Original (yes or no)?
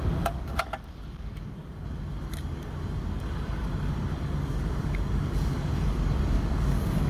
no